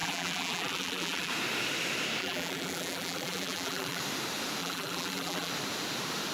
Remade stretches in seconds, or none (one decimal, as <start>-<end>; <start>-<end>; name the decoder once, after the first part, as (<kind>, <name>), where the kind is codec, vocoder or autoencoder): 0.0-1.3 (vocoder, BigVGAN v2); 2.2-4.0; 4.6-5.5